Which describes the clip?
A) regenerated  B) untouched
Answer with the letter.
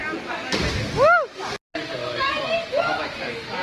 B